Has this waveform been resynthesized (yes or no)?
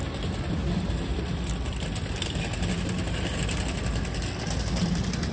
no